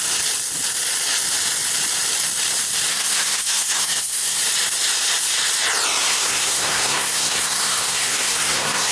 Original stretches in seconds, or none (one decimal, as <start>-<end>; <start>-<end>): 0.0-2.9; 4.4-6.0